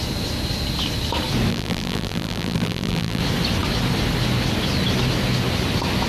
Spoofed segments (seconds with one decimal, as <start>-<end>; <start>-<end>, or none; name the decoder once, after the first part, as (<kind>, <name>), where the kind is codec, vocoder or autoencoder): 1.5-3.2 (vocoder, BigVGAN v2)